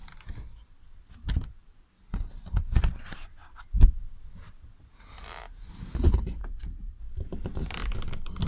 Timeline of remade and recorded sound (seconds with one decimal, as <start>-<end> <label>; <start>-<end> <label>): 0.0-6.4 recorded; 6.4-7.0 remade; 7.0-8.5 recorded